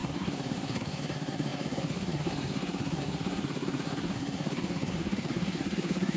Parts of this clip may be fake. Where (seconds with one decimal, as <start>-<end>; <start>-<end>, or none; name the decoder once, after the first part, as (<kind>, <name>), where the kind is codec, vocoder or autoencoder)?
0.0-6.2 (codec, SNAC)